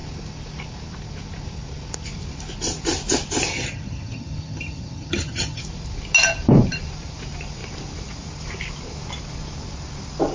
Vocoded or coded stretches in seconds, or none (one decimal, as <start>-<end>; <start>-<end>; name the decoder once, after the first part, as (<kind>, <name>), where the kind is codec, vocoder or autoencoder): 3.5-5.6 (vocoder, HiFi-GAN)